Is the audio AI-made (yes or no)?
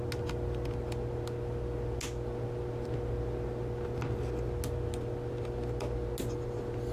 no